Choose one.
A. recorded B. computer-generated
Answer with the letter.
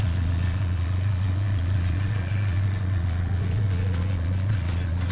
B